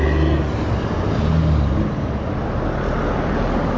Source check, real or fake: real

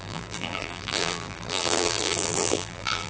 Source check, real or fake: fake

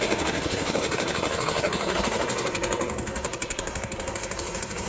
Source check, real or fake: fake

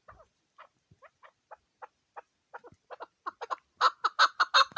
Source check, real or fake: real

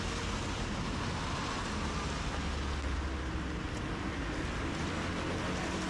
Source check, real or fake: real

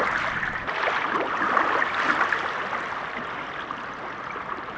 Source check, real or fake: real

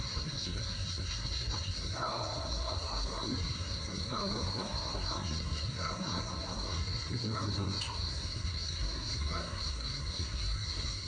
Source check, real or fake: fake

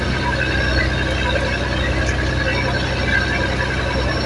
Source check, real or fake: real